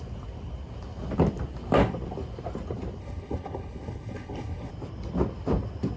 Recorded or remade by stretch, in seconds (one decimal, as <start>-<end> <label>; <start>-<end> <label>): 0.0-3.0 recorded; 3.0-4.7 remade; 4.7-6.0 recorded